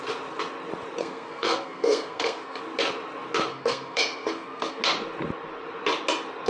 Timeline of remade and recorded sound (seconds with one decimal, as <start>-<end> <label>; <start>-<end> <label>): 0.0-1.0 recorded; 1.0-2.6 remade; 2.6-3.5 recorded; 3.5-4.8 remade; 4.8-6.5 recorded